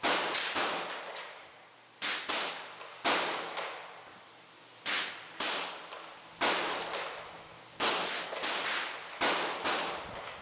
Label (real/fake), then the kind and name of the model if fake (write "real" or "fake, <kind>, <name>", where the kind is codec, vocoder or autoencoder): real